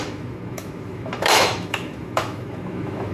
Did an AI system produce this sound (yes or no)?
yes